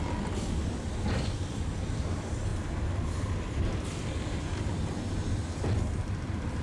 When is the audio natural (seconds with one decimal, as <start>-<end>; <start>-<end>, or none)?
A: 0.0-6.6